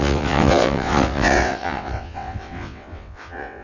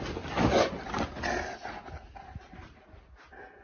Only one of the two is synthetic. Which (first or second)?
first